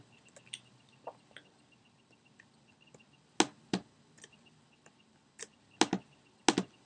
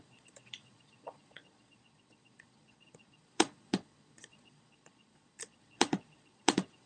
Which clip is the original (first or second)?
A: first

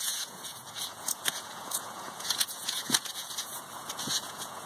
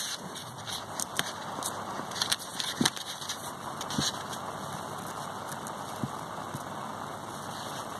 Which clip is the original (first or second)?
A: second